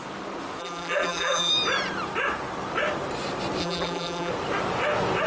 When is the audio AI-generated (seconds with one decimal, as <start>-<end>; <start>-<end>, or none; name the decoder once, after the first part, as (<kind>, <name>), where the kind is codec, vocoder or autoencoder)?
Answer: 0.6-1.5 (vocoder, BigVGAN v2); 3.6-4.3